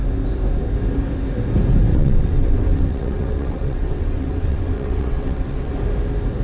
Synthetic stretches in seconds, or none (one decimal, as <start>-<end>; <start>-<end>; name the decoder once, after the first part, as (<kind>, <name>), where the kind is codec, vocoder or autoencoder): 1.9-5.7 (vocoder, WaveNeXt)